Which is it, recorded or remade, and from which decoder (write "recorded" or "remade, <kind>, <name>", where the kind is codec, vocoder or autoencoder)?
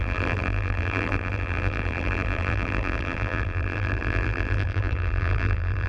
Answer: remade, vocoder, BigVGAN v2